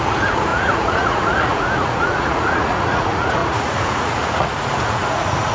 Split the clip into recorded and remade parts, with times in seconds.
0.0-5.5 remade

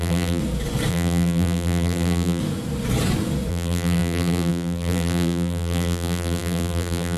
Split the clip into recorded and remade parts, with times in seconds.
0.0-0.4 remade; 0.4-0.9 recorded; 0.9-2.4 remade; 2.4-3.5 recorded; 3.5-7.2 remade

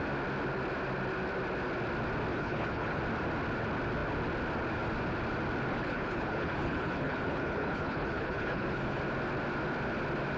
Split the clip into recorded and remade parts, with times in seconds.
0.0-2.3 recorded; 2.3-3.0 remade; 3.0-5.7 recorded; 5.7-9.0 remade; 9.0-10.4 recorded

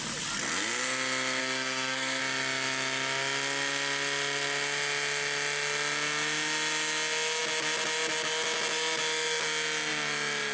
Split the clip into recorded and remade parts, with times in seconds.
0.0-1.4 recorded; 1.4-2.2 remade; 2.2-10.5 recorded

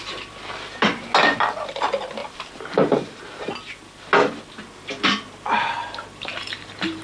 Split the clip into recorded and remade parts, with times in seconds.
0.0-2.2 recorded; 2.2-3.2 remade; 3.2-5.8 recorded; 5.8-7.0 remade

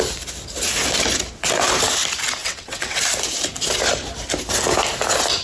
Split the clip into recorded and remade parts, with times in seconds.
0.0-2.4 recorded; 2.4-3.0 remade; 3.0-5.4 recorded